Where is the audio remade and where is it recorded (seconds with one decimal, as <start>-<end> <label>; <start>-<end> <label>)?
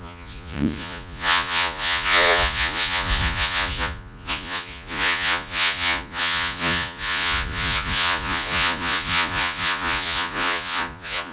0.0-11.3 remade